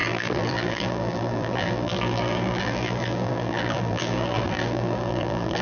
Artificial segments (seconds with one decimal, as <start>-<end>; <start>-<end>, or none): 0.0-5.6